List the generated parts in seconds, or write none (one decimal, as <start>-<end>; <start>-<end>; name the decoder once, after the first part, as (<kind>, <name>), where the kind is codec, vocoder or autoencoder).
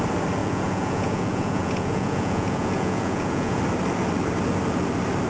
0.4-3.6 (vocoder, Vocos)